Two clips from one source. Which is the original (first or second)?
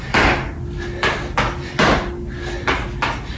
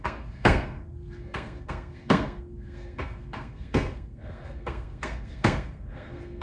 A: first